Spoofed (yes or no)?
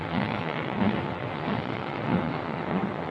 yes